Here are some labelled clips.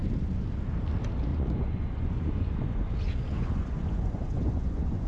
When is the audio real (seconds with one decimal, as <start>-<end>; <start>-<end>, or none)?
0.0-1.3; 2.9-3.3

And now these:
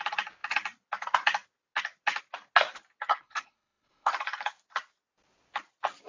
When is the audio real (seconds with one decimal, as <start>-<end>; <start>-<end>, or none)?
0.0-3.1; 4.1-6.1

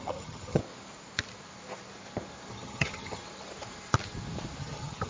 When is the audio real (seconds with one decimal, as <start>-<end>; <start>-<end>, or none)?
0.6-2.5; 3.2-4.6

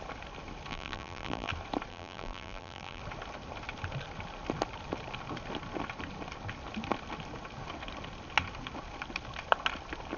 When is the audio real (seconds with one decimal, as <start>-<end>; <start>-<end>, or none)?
0.0-0.7; 1.5-1.9; 3.0-10.2

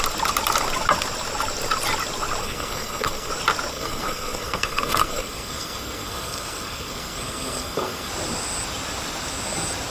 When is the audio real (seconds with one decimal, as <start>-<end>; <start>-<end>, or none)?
0.0-2.4; 3.3-3.7; 8.1-9.9

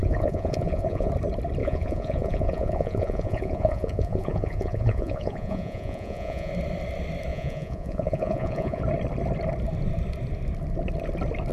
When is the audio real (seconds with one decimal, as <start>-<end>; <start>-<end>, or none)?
1.1-1.6; 6.5-7.3; 8.8-11.5